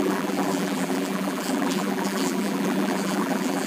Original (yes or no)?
no